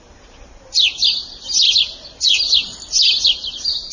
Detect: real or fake real